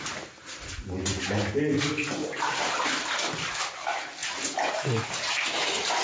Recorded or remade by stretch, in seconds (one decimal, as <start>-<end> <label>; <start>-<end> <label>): 0.0-2.2 recorded; 2.2-2.9 remade; 2.9-6.0 recorded